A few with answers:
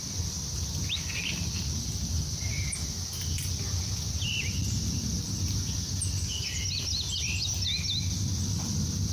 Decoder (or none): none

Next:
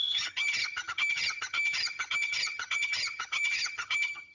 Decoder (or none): vocoder, HiFi-GAN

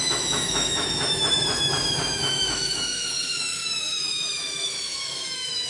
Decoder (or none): autoencoder, DAC-VAE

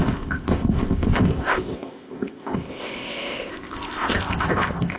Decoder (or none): codec, ZipCodec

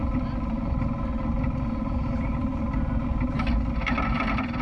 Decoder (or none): none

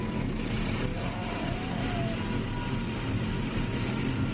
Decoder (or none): none